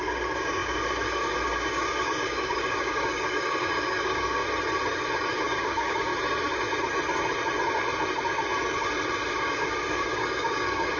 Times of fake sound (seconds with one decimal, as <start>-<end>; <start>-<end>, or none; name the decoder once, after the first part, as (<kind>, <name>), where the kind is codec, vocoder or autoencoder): 0.0-4.4 (codec, DAC); 5.4-6.1; 9.3-11.0

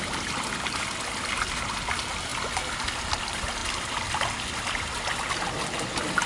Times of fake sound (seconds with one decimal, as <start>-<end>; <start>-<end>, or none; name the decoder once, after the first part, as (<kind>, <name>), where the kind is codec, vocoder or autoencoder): none